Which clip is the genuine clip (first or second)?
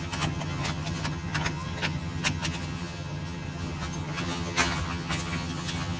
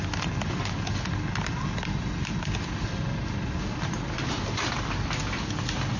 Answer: second